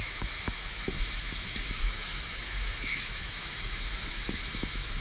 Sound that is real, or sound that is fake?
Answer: fake